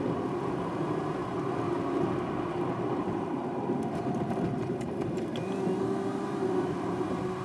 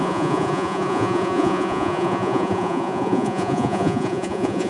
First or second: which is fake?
second